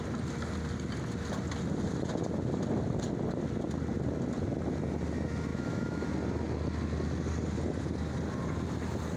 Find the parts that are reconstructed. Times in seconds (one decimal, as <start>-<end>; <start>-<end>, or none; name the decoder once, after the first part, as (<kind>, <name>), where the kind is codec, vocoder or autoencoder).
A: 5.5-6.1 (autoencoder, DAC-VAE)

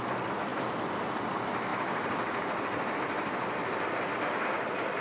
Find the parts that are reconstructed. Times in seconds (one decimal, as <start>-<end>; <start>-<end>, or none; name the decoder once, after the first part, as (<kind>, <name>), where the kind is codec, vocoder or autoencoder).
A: none

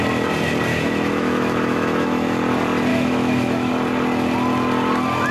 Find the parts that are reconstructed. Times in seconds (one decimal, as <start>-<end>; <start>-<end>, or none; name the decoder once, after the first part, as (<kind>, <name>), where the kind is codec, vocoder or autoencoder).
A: 0.7-2.4 (autoencoder, DAC-VAE); 2.9-3.7

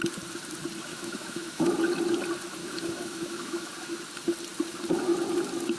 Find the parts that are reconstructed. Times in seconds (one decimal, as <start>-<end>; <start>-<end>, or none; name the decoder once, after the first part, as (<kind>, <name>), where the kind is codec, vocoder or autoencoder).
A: 0.9-1.7 (autoencoder, DAC-VAE); 2.6-3.7

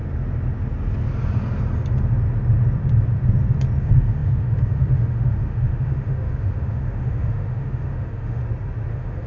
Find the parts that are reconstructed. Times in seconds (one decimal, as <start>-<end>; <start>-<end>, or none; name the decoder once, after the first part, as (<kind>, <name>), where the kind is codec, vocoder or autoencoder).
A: 3.8-8.4 (autoencoder, DAC-VAE); 8.9-9.3

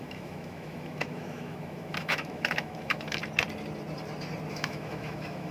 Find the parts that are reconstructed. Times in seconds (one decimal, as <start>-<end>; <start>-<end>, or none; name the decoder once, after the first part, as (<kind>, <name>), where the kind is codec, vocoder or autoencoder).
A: 0.0-3.2 (autoencoder, DAC-VAE); 4.5-5.5

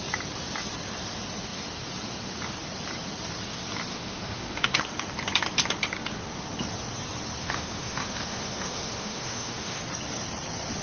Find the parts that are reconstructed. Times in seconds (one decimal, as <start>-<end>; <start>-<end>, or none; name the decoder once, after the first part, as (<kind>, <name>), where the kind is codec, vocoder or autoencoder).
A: 3.9-4.8 (autoencoder, DAC-VAE); 7.4-9.8